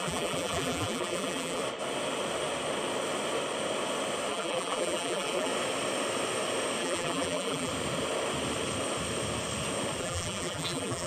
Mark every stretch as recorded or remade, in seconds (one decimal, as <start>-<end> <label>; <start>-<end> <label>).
0.0-1.6 remade; 1.6-4.3 recorded; 4.3-5.5 remade; 5.5-6.8 recorded; 6.8-7.7 remade; 7.7-10.0 recorded; 10.0-11.1 remade